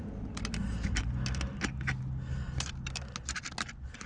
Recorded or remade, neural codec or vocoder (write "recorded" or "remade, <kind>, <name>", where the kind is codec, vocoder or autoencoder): recorded